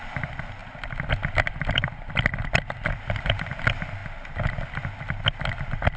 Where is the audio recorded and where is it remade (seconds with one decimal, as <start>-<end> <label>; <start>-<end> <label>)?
0.0-0.6 remade; 0.6-1.5 recorded; 1.5-4.0 remade; 4.0-5.4 recorded; 5.4-6.0 remade